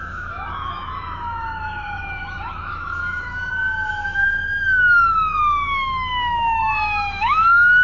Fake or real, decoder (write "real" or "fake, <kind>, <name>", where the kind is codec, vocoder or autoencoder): fake, autoencoder, DAC-VAE